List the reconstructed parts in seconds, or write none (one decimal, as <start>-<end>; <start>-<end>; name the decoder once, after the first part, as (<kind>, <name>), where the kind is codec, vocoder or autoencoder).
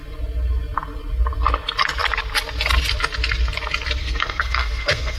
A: 4.0-5.2 (codec, SNAC)